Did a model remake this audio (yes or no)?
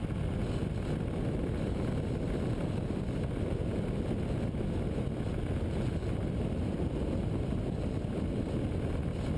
no